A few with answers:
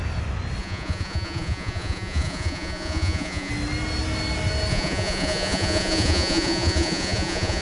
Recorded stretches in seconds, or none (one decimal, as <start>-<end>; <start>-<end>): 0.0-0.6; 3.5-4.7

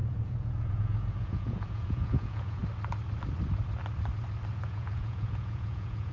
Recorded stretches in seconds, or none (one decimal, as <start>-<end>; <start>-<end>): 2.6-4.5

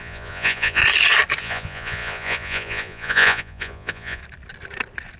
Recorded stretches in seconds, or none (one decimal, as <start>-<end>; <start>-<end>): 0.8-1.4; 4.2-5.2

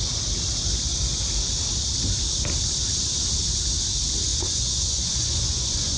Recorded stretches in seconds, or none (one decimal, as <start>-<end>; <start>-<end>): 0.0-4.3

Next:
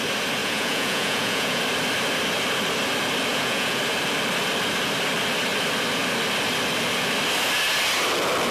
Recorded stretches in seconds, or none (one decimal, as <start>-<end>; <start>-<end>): 0.0-0.4; 1.6-3.3; 3.8-8.5